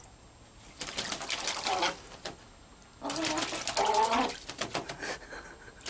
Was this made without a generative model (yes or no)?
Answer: yes